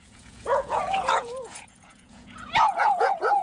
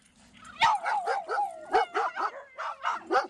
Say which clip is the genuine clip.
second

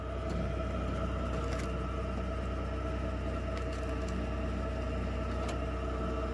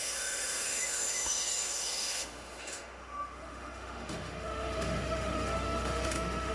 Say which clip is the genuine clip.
first